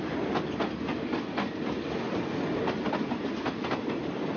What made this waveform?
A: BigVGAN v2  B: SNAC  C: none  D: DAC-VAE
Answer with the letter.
C